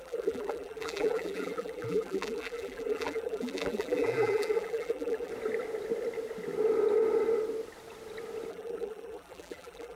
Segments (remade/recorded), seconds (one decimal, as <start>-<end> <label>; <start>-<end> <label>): 0.0-5.3 remade; 5.3-8.5 recorded; 8.5-10.0 remade